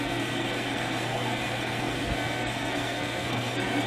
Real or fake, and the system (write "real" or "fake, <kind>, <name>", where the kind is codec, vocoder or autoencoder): fake, codec, SNAC